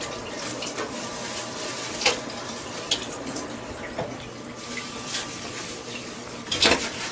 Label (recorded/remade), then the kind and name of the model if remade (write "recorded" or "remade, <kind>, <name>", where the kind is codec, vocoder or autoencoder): recorded